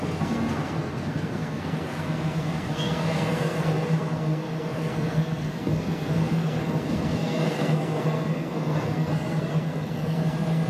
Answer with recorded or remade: remade